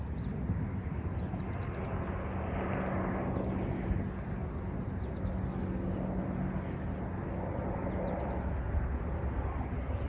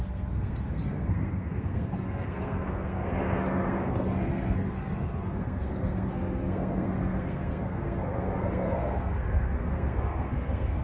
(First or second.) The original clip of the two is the first